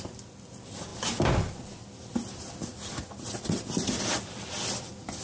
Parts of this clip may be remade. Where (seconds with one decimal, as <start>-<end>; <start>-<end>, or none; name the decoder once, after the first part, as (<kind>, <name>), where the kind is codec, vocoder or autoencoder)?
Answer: none

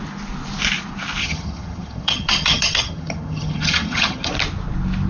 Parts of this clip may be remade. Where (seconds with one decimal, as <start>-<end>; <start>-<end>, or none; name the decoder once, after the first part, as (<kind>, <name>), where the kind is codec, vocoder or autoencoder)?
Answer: 1.2-4.3 (vocoder, HiFi-GAN)

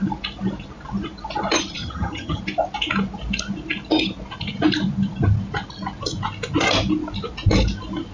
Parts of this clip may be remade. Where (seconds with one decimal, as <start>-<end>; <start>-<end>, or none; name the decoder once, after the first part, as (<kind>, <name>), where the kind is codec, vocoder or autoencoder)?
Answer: 1.8-2.4 (vocoder, HiFi-GAN)

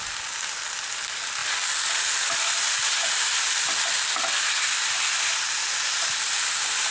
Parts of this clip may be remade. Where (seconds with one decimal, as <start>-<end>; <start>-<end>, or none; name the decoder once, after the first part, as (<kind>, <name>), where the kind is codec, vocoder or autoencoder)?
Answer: none

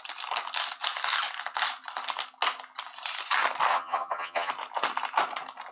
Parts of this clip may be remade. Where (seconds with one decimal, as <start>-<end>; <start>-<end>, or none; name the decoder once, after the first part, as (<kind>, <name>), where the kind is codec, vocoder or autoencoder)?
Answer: 3.7-4.5 (vocoder, HiFi-GAN)